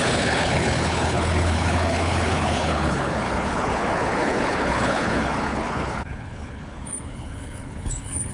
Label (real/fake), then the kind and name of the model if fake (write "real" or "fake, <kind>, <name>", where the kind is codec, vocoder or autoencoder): fake, codec, HILCodec